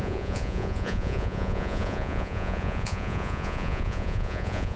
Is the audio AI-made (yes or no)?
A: yes